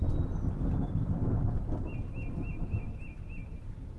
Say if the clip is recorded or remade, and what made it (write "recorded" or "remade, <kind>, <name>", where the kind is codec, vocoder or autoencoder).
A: recorded